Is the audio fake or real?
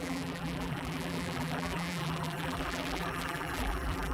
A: fake